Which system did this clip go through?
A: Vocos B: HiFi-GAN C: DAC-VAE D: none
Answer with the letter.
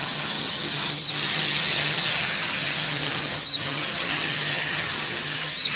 B